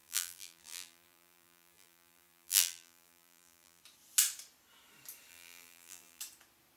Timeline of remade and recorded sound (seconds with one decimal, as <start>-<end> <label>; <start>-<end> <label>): 0.0-3.8 remade; 3.8-5.3 recorded; 5.3-6.2 remade; 6.2-6.8 recorded